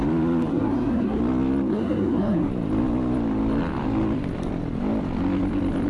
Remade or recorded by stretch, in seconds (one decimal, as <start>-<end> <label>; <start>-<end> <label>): 0.0-0.5 recorded; 0.5-1.2 remade; 1.2-1.7 recorded; 1.7-2.5 remade; 2.5-5.9 recorded